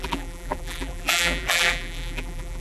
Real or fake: fake